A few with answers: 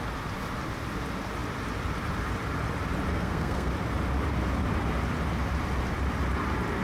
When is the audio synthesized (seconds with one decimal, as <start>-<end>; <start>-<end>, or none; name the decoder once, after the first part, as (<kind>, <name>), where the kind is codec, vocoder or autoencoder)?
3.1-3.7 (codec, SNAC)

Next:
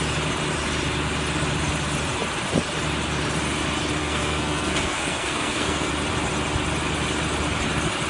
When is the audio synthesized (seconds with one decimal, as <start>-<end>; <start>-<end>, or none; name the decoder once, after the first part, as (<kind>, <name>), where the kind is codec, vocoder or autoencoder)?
4.0-5.9 (codec, SNAC)

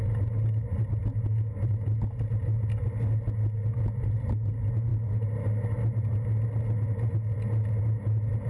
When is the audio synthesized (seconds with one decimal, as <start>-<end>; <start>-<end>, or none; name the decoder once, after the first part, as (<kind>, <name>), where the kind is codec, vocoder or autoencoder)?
none

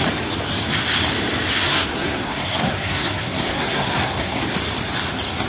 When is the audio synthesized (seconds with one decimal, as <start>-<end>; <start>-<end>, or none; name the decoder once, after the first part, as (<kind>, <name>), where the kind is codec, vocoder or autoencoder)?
1.6-4.4 (codec, SNAC)

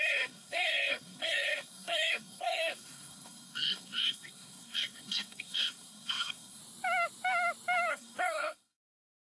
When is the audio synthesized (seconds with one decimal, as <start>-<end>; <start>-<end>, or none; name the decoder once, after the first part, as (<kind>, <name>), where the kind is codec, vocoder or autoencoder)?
0.0-6.6 (codec, SNAC); 7.9-9.4